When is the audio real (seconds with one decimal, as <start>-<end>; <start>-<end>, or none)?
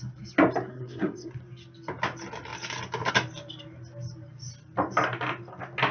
0.0-0.7; 1.3-5.9